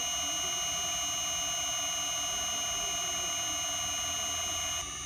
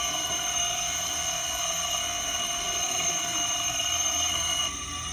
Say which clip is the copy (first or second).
second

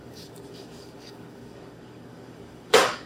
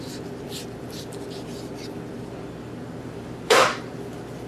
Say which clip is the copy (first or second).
first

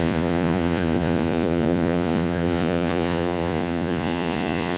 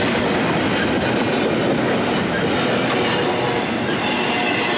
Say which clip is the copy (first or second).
first